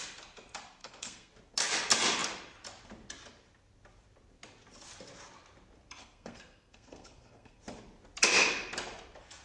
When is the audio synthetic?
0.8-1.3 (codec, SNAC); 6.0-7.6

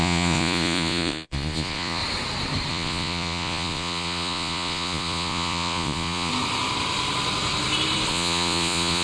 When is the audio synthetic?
0.0-2.0 (vocoder, Vocos); 2.7-6.3; 8.1-9.0

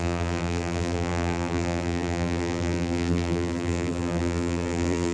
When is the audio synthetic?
0.0-5.1 (vocoder, BigVGAN v2)